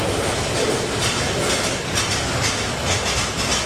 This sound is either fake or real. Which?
real